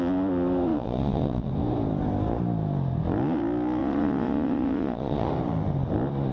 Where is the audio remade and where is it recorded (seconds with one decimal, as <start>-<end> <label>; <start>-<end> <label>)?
0.0-0.7 recorded; 0.7-1.5 remade; 1.5-3.8 recorded; 3.8-5.3 remade; 5.3-6.3 recorded